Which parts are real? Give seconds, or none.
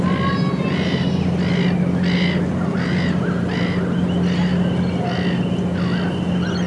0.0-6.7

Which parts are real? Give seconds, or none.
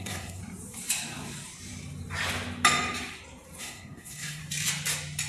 0.4-3.6; 4.4-5.3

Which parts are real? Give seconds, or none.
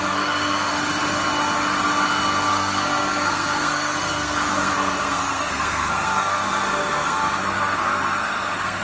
0.7-2.5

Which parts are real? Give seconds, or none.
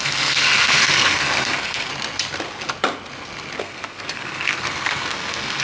1.9-3.6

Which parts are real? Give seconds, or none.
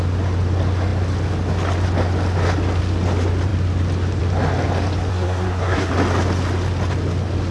0.0-5.1; 5.9-7.5